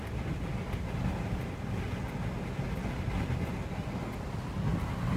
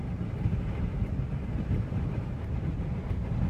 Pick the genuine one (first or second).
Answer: first